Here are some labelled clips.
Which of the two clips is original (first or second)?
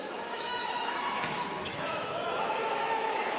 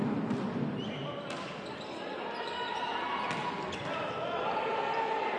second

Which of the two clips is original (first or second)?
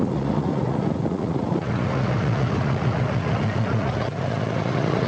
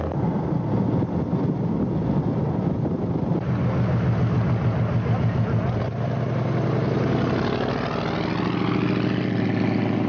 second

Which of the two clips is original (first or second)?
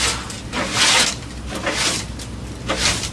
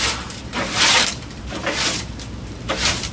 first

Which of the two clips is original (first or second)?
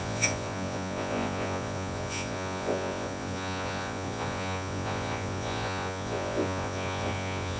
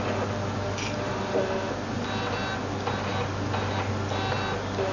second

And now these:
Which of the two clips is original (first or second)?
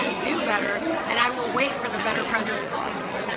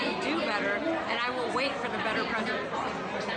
second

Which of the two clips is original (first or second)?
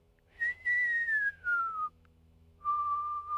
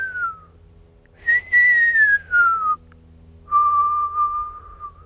second